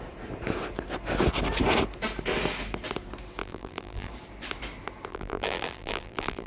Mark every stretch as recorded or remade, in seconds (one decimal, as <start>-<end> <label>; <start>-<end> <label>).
0.0-3.4 recorded; 3.4-4.1 remade; 4.1-5.1 recorded; 5.1-6.5 remade